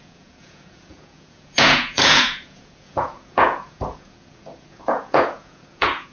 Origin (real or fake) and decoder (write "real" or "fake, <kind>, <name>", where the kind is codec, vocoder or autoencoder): fake, vocoder, Vocos